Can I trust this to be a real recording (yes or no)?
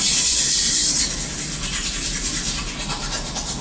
yes